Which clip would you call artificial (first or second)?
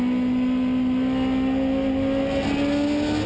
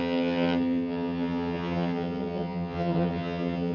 second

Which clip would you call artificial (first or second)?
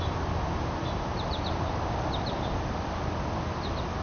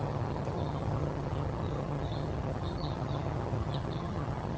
second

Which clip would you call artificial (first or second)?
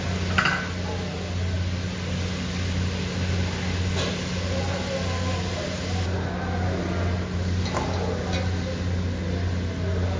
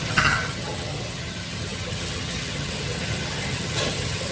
second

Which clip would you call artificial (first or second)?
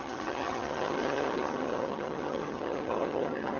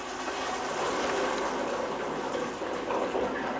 first